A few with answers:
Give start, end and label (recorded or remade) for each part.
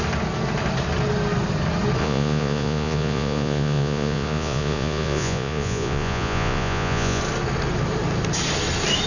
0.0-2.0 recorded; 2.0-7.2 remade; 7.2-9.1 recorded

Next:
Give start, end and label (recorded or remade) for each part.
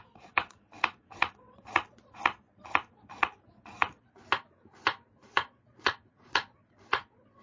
0.0-4.2 remade; 4.2-5.1 recorded; 5.1-7.4 remade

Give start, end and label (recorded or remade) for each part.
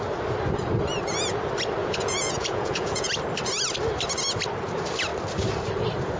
0.0-1.8 recorded; 1.8-3.1 remade; 3.1-6.2 recorded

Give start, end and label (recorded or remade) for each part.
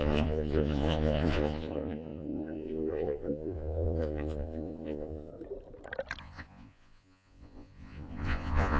0.0-5.3 remade; 5.3-6.2 recorded; 6.2-8.8 remade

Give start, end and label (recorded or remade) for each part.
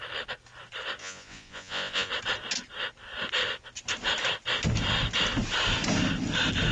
0.0-1.0 recorded; 1.0-2.1 remade; 2.1-6.7 recorded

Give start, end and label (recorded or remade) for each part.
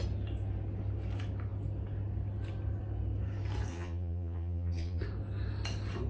0.0-3.7 recorded; 3.7-5.0 remade; 5.0-6.1 recorded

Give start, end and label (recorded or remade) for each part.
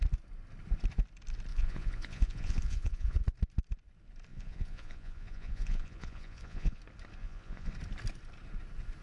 0.0-1.5 recorded; 1.5-3.2 remade; 3.2-4.3 recorded; 4.3-6.8 remade; 6.8-7.2 recorded; 7.2-7.7 remade; 7.7-9.0 recorded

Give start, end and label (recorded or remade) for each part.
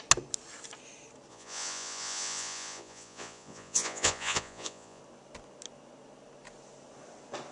0.0-1.3 recorded; 1.3-5.0 remade; 5.0-7.5 recorded